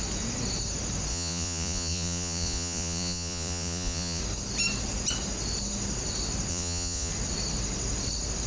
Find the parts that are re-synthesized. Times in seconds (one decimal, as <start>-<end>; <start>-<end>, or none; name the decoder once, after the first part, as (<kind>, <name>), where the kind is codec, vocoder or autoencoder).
1.1-4.2 (vocoder, Vocos); 6.5-7.1